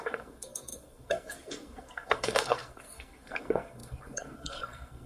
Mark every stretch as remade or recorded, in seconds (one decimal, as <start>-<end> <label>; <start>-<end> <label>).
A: 0.0-5.1 remade